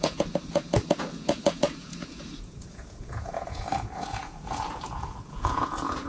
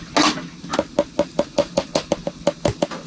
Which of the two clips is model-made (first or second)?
first